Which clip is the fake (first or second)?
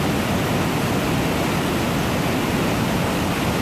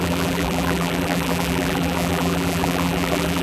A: second